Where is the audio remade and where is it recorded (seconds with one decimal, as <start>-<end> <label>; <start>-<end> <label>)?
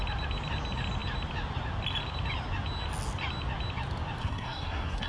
0.0-4.2 recorded; 4.2-5.1 remade